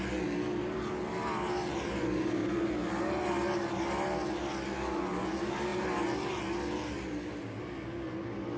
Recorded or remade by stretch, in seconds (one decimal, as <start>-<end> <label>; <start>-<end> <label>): 0.0-8.6 recorded